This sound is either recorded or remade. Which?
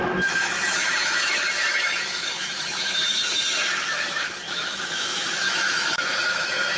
remade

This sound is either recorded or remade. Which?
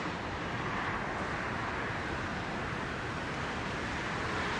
recorded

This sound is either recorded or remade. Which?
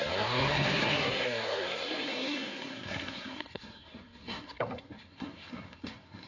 remade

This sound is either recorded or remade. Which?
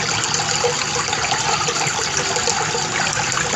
recorded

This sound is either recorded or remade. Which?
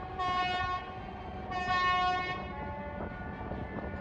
recorded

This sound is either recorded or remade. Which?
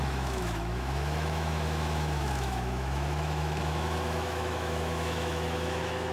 remade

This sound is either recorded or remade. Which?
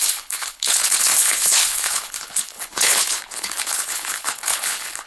remade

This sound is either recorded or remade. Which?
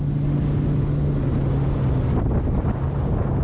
recorded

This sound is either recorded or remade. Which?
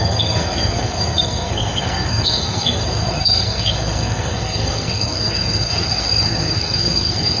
remade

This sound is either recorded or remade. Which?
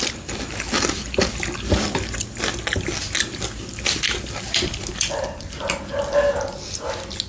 recorded